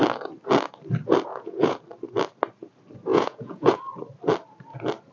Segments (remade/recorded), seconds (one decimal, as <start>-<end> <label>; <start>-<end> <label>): 0.0-1.3 recorded; 1.3-1.8 remade; 1.8-3.1 recorded; 3.1-3.8 remade; 3.8-5.1 recorded